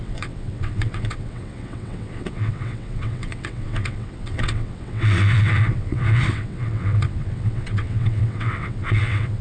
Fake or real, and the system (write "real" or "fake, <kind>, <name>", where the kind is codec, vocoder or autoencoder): fake, vocoder, WaveNeXt